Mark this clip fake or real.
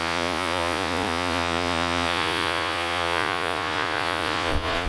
fake